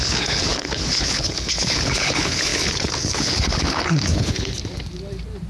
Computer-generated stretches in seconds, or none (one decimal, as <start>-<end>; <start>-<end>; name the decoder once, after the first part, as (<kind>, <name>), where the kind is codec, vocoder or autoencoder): 0.0-4.6 (codec, HILCodec)